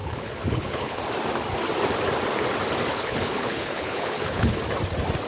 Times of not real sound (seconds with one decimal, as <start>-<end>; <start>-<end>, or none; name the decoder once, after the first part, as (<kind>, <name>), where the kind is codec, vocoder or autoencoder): 0.0-1.0 (codec, HILCodec); 2.9-4.6